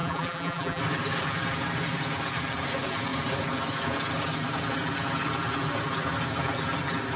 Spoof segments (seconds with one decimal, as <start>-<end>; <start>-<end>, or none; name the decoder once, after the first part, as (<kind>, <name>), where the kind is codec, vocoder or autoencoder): 0.0-0.8 (vocoder, BigVGAN v2)